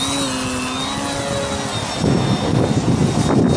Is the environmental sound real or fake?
real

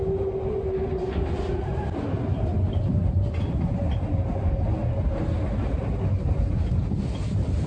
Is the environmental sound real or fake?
real